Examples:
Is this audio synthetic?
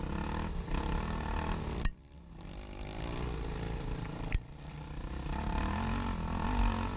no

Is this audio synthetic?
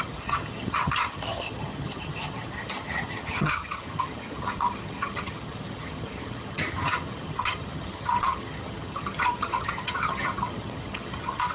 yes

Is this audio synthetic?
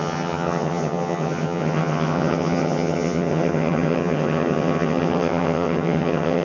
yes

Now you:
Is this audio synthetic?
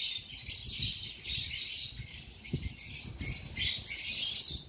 no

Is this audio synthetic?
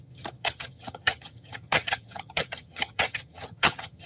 yes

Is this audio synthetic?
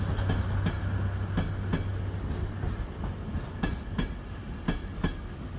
no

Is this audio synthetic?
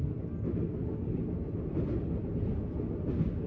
no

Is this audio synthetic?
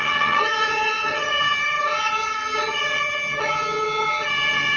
yes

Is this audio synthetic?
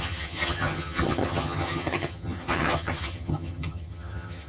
yes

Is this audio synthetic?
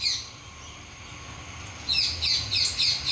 no